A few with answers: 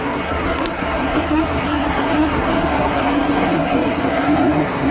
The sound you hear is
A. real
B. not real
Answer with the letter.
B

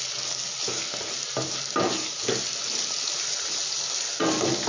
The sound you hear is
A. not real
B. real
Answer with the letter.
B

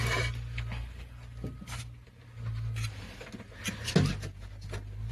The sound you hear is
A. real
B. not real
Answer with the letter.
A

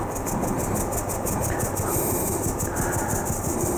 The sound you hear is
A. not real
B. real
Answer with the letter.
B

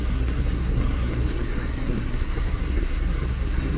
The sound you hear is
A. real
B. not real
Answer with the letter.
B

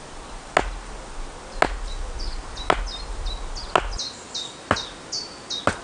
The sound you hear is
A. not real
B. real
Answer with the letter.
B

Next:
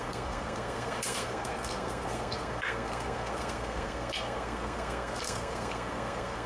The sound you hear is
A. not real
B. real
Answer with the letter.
A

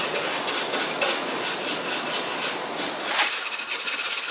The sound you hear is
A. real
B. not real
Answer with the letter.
A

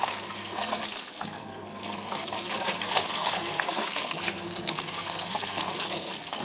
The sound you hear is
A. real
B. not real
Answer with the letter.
B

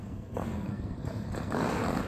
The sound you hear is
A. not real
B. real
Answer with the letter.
A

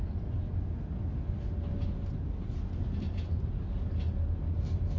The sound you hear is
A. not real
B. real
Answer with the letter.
B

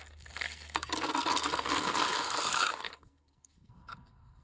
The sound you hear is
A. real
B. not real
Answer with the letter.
B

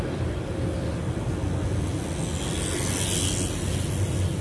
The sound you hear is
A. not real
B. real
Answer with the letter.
B